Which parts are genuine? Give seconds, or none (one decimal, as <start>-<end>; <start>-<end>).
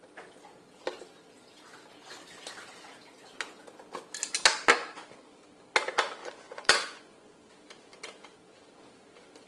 0.0-6.2; 7.5-9.5